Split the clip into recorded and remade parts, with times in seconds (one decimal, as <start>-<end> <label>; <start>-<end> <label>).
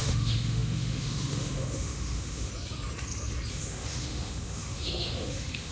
0.0-2.5 remade; 2.5-3.5 recorded; 3.5-5.7 remade